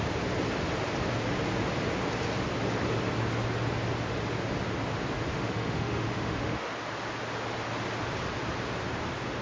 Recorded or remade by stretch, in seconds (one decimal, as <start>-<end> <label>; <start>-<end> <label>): 0.0-5.3 recorded; 5.3-6.7 remade; 6.7-9.4 recorded